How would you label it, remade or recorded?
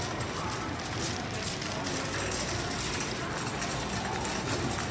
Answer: recorded